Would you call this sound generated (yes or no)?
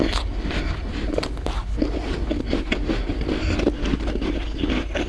no